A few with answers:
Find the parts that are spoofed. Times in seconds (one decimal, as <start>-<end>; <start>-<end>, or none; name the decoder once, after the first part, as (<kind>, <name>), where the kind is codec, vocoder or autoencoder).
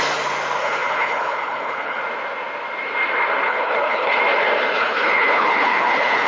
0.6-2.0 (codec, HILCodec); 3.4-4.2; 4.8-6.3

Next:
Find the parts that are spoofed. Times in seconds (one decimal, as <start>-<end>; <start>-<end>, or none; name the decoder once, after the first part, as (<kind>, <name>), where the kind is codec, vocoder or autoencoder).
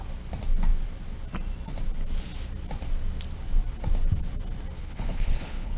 4.8-5.8 (codec, HILCodec)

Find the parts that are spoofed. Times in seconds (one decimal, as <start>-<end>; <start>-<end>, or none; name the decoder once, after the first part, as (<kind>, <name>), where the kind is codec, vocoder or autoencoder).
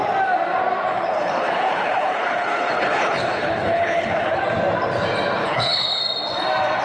0.9-4.4 (codec, HILCodec); 5.4-6.0